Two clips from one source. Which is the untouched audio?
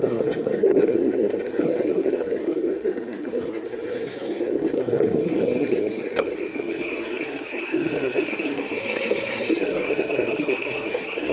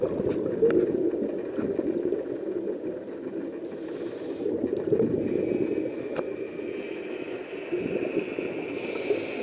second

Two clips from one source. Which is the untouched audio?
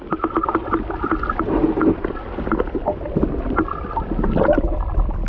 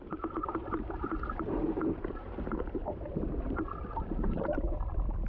first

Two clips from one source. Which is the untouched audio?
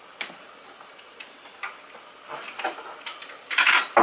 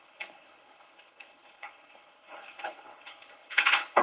first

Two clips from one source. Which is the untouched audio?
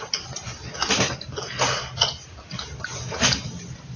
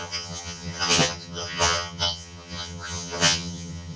first